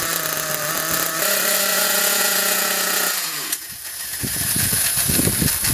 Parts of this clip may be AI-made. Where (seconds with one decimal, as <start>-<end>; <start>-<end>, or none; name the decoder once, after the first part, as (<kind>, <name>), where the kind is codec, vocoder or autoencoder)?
1.7-5.1 (vocoder, Vocos)